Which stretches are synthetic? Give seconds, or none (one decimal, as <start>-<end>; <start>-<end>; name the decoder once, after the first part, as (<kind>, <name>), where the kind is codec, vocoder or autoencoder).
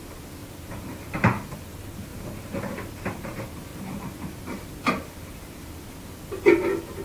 0.4-1.1 (vocoder, BigVGAN v2); 3.7-5.9